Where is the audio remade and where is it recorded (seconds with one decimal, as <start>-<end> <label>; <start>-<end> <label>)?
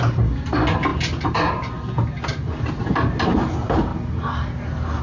0.0-5.0 recorded